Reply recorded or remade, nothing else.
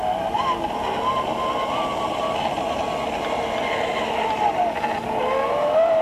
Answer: recorded